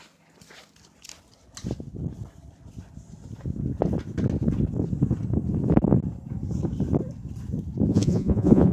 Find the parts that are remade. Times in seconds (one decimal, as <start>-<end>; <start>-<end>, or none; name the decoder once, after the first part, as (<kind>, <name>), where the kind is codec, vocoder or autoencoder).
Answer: 7.9-8.7 (vocoder, Vocos)